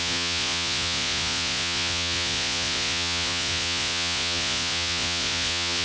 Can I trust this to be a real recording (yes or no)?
no